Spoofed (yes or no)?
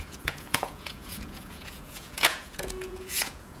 yes